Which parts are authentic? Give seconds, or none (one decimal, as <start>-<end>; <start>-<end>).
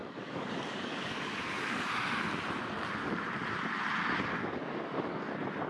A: 1.8-4.3; 5.2-5.7